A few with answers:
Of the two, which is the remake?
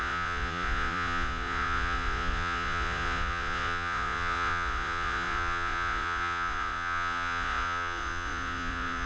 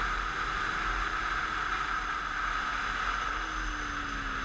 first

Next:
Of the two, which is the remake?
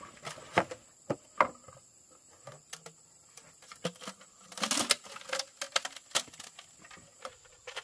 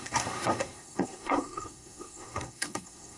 second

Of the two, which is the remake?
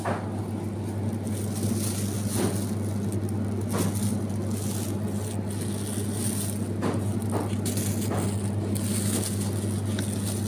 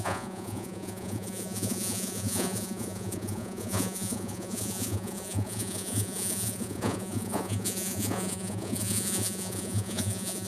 second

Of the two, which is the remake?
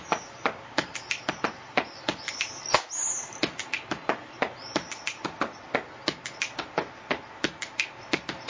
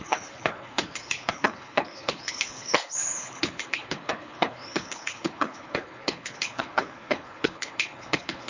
second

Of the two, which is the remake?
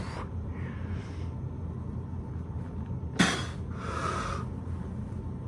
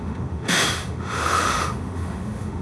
second